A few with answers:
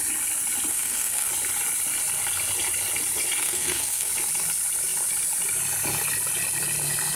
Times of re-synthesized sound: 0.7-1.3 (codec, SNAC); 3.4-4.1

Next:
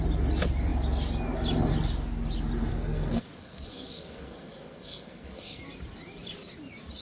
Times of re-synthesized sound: 2.7-5.6 (codec, SNAC)

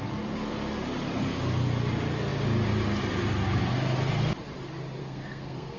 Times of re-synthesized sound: 5.0-5.8 (codec, SNAC)

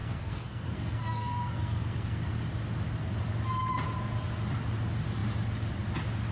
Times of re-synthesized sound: 0.0-2.4 (codec, SNAC)

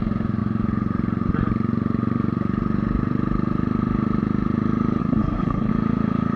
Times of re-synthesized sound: 5.0-5.7 (codec, SNAC)